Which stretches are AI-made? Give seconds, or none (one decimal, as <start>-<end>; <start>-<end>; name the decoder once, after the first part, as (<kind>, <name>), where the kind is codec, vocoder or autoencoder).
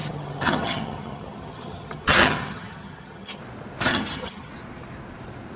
0.0-3.4 (vocoder, HiFi-GAN); 3.9-4.5